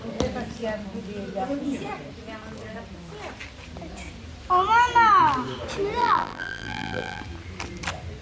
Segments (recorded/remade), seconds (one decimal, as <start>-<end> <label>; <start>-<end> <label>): 0.0-6.0 recorded; 6.0-7.2 remade; 7.2-8.2 recorded